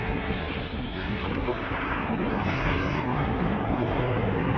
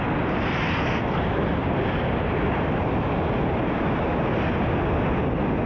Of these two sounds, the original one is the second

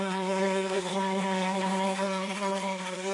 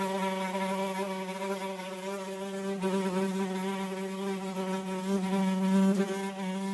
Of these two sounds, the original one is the second